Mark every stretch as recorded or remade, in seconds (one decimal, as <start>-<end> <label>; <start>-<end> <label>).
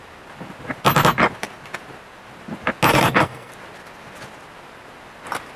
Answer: 0.0-2.9 recorded; 2.9-3.5 remade; 3.5-5.6 recorded